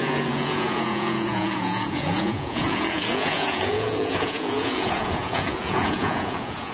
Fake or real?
fake